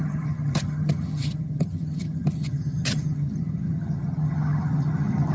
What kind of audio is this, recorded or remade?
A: remade